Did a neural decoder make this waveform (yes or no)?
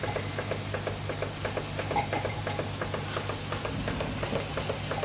no